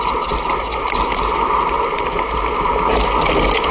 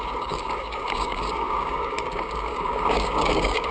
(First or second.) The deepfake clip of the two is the second